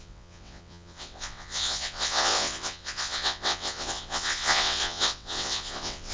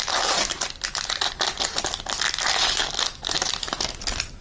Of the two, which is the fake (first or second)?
first